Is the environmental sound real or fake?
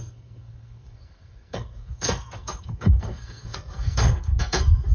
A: fake